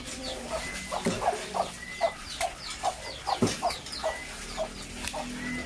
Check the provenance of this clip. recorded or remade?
recorded